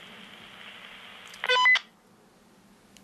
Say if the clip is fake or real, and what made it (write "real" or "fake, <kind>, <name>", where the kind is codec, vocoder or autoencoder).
real